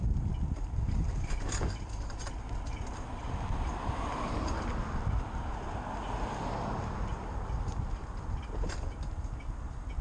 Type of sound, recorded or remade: recorded